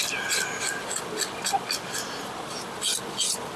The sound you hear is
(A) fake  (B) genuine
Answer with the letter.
B